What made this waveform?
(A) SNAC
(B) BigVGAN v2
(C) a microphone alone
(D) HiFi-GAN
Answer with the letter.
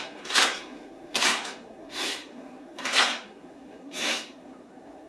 A